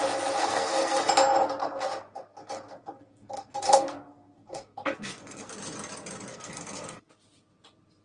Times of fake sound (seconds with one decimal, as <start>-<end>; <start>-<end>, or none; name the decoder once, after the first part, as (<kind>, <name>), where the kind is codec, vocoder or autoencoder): 0.4-1.0 (codec, SNAC); 1.6-5.5; 6.3-7.1